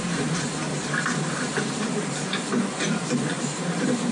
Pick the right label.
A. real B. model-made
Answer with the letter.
B